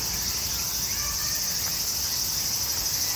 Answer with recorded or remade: recorded